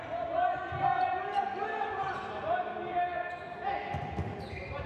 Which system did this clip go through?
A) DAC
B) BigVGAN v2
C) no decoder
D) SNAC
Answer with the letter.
C